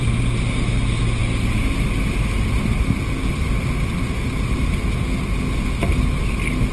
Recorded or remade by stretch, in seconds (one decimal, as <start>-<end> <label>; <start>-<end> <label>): 0.0-6.7 recorded